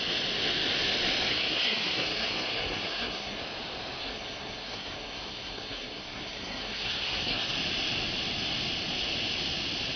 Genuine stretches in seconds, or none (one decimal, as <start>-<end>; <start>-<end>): 0.0-1.3; 3.4-4.0; 7.5-10.0